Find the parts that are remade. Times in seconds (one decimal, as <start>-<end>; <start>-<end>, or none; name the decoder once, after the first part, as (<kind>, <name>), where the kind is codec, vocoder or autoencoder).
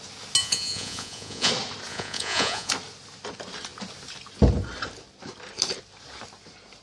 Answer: 0.4-1.5 (vocoder, Vocos); 1.9-2.7